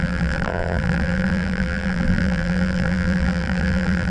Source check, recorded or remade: remade